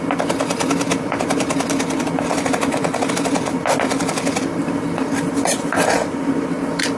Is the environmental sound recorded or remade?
recorded